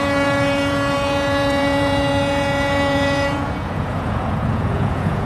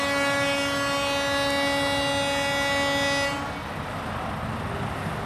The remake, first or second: first